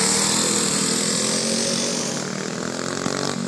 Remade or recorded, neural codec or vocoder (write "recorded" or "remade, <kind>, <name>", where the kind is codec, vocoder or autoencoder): recorded